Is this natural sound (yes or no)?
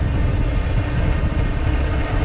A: yes